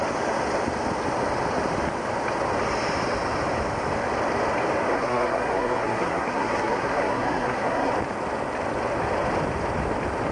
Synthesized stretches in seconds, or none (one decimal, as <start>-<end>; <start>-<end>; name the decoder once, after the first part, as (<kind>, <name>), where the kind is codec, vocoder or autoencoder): 4.9-7.9 (codec, SNAC)